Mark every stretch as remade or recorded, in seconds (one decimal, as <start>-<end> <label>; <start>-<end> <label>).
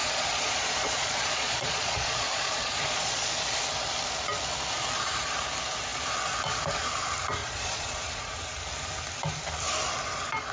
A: 0.0-3.3 remade; 3.3-7.4 recorded; 7.4-8.4 remade; 8.4-10.5 recorded